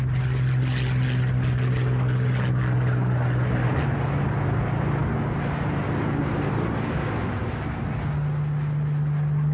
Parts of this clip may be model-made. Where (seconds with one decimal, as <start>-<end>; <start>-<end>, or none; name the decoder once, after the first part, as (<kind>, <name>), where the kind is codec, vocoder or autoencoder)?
none